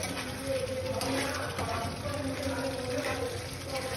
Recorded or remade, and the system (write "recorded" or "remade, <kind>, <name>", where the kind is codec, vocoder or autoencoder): recorded